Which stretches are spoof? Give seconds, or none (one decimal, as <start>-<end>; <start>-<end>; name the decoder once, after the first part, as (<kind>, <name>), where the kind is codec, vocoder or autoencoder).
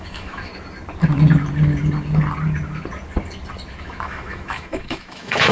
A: 0.0-0.5 (autoencoder, DAC-VAE); 3.8-5.5